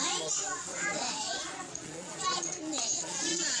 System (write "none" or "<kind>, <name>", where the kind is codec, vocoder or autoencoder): vocoder, Vocos